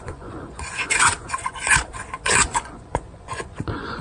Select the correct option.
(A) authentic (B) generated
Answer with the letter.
B